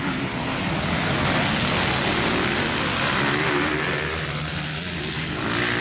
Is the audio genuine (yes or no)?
yes